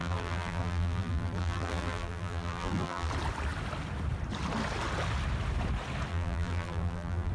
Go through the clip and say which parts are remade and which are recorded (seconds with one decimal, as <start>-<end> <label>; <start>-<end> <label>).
0.0-3.1 remade; 3.1-6.1 recorded; 6.1-7.3 remade